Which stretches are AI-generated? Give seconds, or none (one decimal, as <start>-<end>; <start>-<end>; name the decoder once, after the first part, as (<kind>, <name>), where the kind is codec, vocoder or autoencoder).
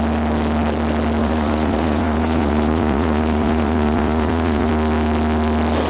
1.2-4.7 (vocoder, Vocos)